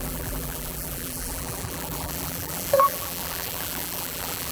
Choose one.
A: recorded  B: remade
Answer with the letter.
B